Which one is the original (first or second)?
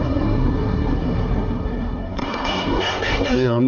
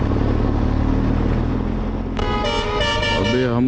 second